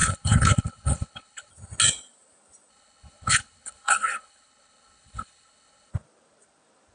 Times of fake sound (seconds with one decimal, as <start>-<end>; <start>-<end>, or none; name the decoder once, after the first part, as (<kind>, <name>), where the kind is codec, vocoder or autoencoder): 0.0-1.5 (codec, HILCodec); 2.7-5.9